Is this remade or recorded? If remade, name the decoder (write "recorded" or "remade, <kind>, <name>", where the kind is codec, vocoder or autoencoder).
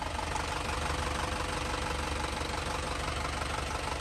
recorded